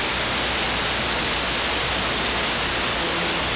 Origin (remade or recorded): recorded